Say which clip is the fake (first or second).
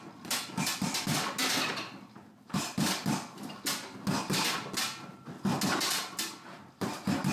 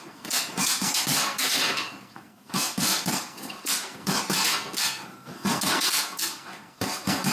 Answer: second